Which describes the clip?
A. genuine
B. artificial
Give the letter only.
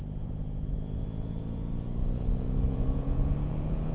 B